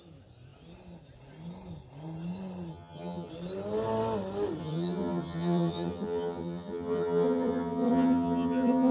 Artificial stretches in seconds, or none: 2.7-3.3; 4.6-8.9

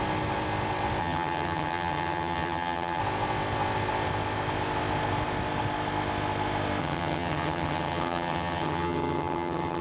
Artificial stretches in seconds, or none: 1.0-3.0; 6.8-9.8

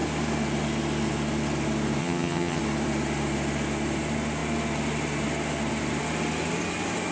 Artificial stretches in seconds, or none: 2.0-2.6

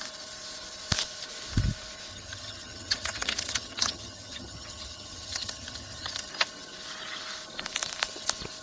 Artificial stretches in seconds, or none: 2.1-6.3

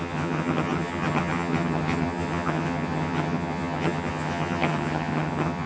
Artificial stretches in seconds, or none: 0.0-5.7

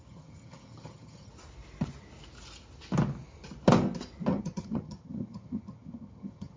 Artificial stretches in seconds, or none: 0.0-1.3; 4.3-6.6

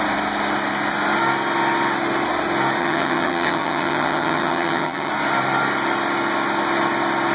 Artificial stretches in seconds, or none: 2.8-5.1

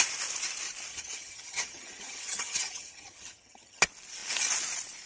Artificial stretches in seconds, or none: 0.9-3.8